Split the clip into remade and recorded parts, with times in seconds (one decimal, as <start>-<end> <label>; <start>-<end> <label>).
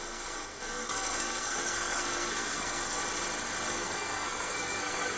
0.0-3.0 remade; 3.0-3.7 recorded; 3.7-5.2 remade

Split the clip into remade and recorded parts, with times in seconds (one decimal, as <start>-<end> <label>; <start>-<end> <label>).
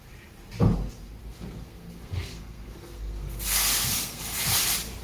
0.0-1.2 recorded; 1.2-4.2 remade; 4.2-5.0 recorded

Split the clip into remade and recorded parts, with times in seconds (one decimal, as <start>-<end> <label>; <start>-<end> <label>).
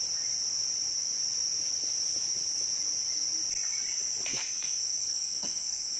0.0-4.3 recorded; 4.3-6.0 remade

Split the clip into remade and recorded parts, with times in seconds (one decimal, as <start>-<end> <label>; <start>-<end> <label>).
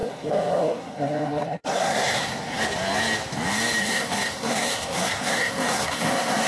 0.0-2.6 remade; 2.6-3.8 recorded; 3.8-6.5 remade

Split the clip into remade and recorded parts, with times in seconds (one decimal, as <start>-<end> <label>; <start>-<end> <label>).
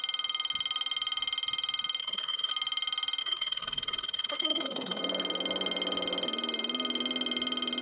0.0-2.0 recorded; 2.0-2.5 remade; 2.5-3.2 recorded; 3.2-5.0 remade; 5.0-7.8 recorded